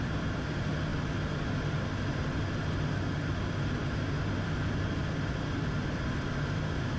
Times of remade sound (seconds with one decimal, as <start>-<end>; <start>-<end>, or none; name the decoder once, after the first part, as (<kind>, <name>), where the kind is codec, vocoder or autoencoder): none